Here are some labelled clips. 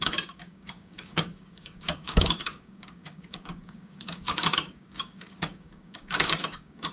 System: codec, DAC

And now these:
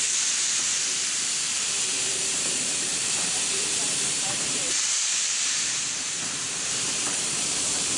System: vocoder, BigVGAN v2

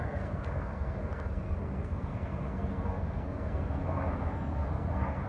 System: codec, SNAC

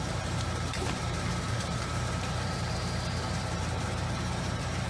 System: vocoder, BigVGAN v2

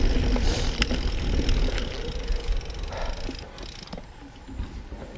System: none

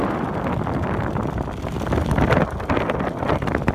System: none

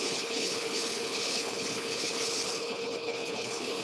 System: codec, HILCodec